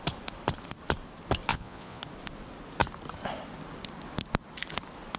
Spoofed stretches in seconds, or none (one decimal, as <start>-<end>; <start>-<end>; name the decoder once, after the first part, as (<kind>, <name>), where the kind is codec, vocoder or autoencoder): 1.5-2.0 (vocoder, Vocos)